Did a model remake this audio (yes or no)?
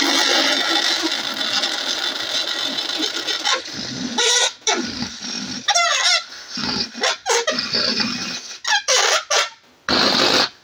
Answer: no